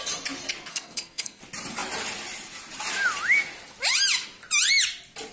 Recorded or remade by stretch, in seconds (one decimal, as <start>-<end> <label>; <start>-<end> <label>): 0.0-0.7 recorded; 0.7-1.4 remade; 1.4-5.3 recorded